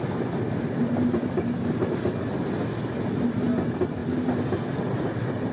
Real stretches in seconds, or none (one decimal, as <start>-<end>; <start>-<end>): 0.0-5.5